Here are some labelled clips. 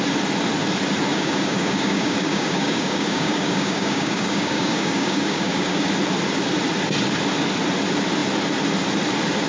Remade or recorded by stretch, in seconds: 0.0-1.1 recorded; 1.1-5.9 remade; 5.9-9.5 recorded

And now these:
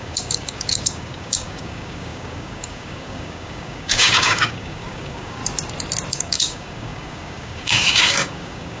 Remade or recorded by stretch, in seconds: 0.0-5.4 remade; 5.4-6.1 recorded; 6.1-8.8 remade

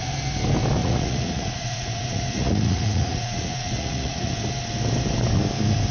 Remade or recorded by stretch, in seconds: 0.0-0.8 recorded; 0.8-4.3 remade; 4.3-5.9 recorded

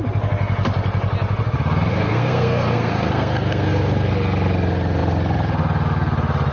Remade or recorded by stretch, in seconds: 0.0-1.9 recorded; 1.9-4.1 remade; 4.1-6.5 recorded

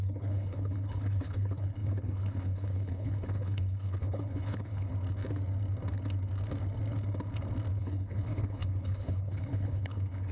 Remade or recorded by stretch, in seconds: 0.0-4.9 remade; 4.9-7.8 recorded; 7.8-10.3 remade